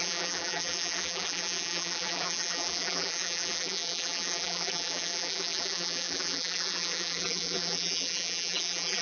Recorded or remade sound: remade